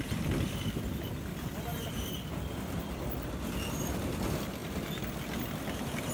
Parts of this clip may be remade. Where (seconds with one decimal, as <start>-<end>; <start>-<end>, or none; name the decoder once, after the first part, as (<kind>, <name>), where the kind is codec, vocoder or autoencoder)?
none